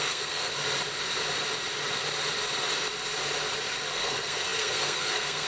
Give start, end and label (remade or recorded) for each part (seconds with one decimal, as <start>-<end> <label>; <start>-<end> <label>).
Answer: 0.0-0.5 remade; 0.5-3.8 recorded; 3.8-5.5 remade